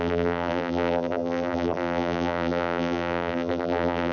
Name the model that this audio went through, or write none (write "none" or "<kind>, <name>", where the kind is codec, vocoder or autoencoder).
vocoder, BigVGAN v2